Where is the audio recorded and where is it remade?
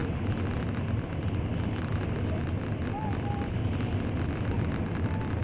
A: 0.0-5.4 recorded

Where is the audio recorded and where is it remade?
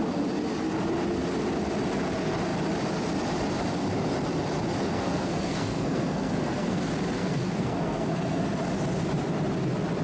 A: 0.0-4.8 recorded; 4.8-6.8 remade; 6.8-7.2 recorded; 7.2-8.4 remade; 8.4-10.0 recorded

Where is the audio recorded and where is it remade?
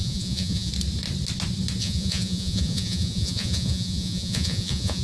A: 0.0-0.7 remade; 0.7-1.8 recorded; 1.8-5.0 remade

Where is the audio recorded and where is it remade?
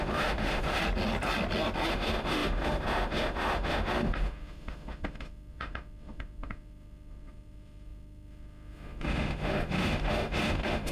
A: 0.0-0.8 remade; 0.8-1.9 recorded; 1.9-10.9 remade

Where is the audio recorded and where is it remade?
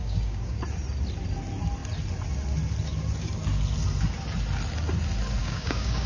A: 0.0-0.6 remade; 0.6-5.4 recorded; 5.4-6.1 remade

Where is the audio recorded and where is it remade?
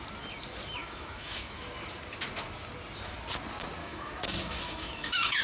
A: 0.0-0.8 recorded; 0.8-1.6 remade; 1.6-3.8 recorded; 3.8-5.4 remade